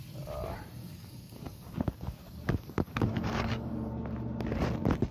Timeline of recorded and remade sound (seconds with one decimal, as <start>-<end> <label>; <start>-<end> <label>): 0.0-0.8 recorded; 0.8-3.9 remade; 3.9-5.1 recorded